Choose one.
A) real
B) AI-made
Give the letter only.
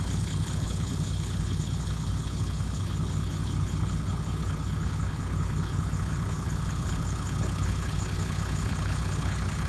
B